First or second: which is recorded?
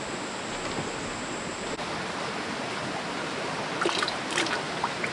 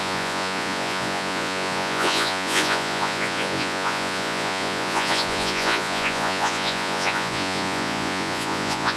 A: first